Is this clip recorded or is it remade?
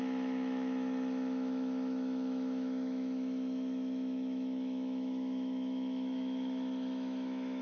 remade